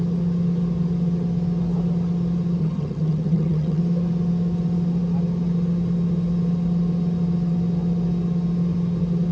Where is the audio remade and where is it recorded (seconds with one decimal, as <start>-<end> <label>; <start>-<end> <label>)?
0.0-2.6 recorded; 2.6-3.8 remade; 3.8-9.3 recorded